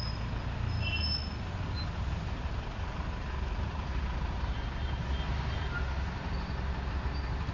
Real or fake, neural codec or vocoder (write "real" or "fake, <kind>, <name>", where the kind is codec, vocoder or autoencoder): real